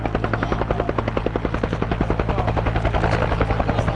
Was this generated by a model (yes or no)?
no